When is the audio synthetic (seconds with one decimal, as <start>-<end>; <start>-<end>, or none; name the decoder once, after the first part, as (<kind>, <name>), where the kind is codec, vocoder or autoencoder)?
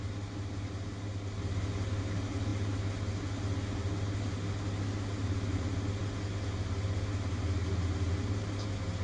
none